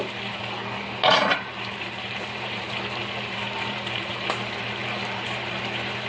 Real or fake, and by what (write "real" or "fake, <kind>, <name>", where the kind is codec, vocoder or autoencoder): fake, vocoder, BigVGAN v2